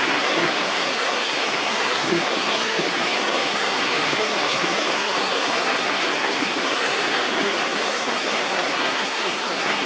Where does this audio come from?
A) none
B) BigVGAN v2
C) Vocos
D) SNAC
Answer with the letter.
D